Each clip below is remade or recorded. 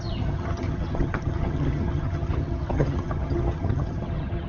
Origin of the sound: remade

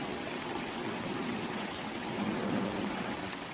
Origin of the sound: remade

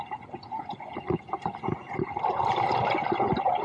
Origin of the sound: recorded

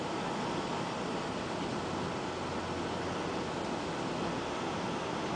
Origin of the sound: recorded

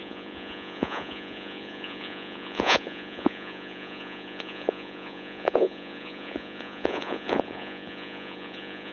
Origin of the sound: remade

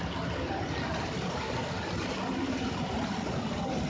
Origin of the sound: recorded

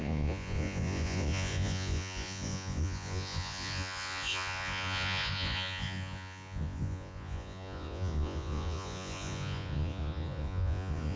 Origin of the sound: remade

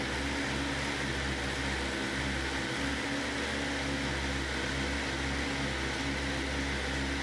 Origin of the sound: recorded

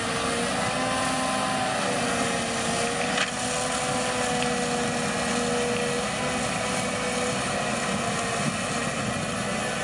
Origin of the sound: recorded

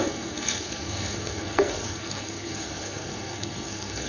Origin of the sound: remade